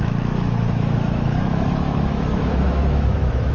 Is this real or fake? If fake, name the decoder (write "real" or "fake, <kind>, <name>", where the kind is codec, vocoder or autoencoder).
fake, autoencoder, DAC-VAE